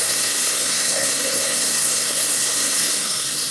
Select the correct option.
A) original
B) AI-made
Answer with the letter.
B